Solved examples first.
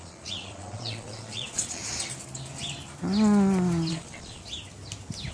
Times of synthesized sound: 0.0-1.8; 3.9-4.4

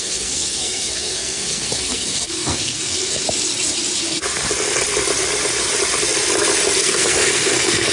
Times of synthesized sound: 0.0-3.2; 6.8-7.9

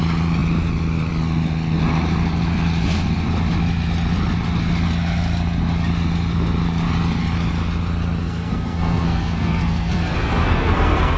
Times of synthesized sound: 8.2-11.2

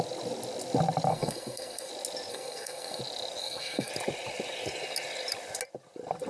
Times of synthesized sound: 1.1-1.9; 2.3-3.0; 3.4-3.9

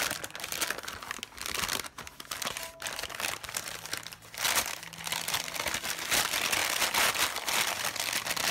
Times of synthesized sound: none

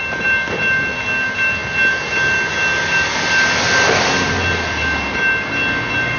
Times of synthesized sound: none

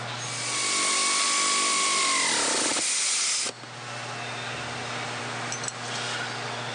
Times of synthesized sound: none

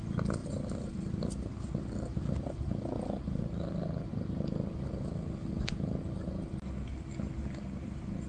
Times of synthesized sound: none